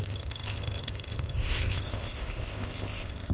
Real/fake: fake